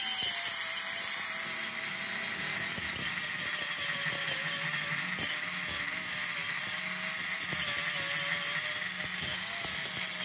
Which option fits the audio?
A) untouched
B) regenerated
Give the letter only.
A